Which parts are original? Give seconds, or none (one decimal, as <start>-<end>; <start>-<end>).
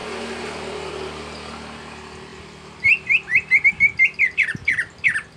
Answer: 0.0-5.4